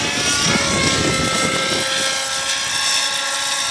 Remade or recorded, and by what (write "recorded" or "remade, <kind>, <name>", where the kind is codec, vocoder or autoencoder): recorded